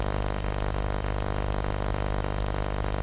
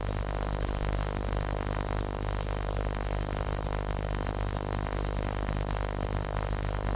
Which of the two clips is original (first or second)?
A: first